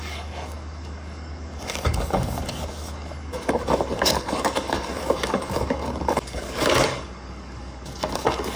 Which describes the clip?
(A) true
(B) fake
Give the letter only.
B